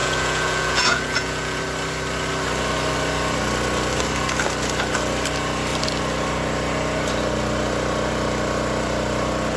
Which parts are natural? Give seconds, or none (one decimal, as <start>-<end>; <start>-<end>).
1.6-9.6